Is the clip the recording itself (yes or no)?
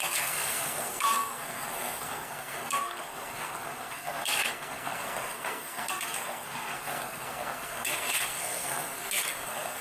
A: no